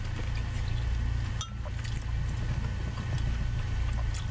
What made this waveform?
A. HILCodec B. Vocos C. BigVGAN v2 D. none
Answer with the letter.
D